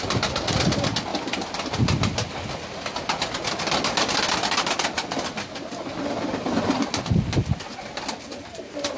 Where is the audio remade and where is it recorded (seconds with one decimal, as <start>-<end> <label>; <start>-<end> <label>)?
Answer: 0.0-9.0 recorded